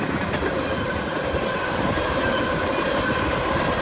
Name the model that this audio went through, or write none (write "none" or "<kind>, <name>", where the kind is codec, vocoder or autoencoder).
none